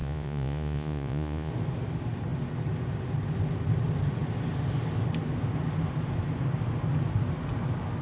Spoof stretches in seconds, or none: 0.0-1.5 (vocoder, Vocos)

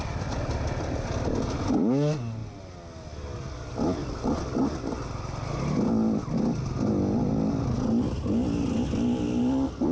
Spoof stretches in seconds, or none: none